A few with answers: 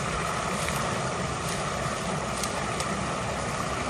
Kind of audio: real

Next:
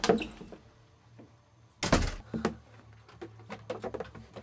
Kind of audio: real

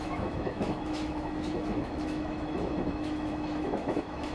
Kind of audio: fake